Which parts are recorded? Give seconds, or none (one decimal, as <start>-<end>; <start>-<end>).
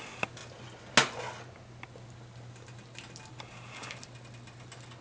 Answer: 0.0-5.0